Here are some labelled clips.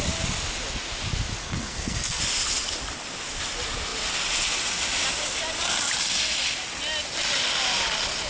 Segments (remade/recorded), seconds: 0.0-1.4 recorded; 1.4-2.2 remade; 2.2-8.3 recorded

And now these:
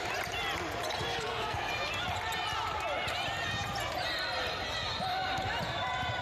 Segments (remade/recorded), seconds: 0.0-1.1 recorded; 1.1-1.7 remade; 1.7-6.2 recorded